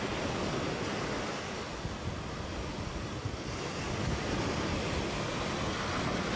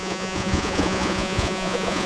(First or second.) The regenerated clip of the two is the second